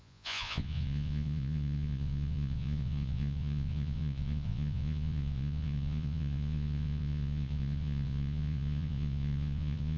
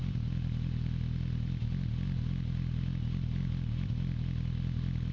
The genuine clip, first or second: second